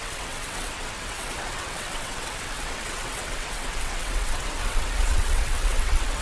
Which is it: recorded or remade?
remade